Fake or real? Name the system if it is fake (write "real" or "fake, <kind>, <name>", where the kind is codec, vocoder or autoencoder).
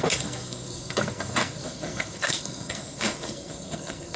fake, codec, SNAC